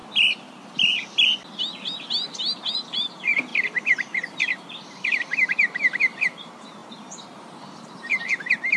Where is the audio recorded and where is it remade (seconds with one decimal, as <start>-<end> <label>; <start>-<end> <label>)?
0.0-2.6 recorded; 2.6-8.8 remade